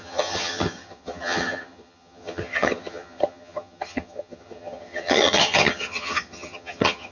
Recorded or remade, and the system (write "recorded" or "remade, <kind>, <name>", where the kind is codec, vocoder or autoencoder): remade, vocoder, HiFi-GAN